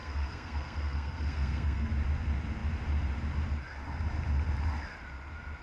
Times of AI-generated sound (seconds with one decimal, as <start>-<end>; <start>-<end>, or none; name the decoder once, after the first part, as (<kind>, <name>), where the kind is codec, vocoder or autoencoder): 0.0-1.9 (codec, SNAC)